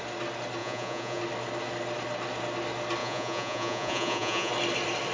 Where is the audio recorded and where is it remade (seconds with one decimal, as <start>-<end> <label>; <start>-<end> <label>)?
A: 0.0-0.6 recorded; 0.6-1.2 remade; 1.2-3.0 recorded; 3.0-4.5 remade; 4.5-5.1 recorded